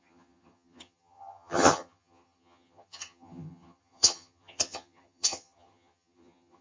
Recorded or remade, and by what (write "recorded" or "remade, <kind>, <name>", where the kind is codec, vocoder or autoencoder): remade, vocoder, HiFi-GAN